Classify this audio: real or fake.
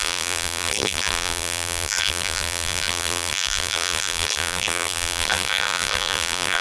fake